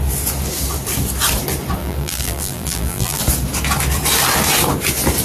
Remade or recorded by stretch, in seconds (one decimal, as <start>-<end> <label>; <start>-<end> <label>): 0.0-1.8 recorded; 1.8-3.2 remade; 3.2-5.2 recorded